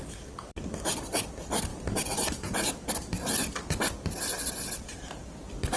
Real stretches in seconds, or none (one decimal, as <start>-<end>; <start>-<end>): 1.7-2.9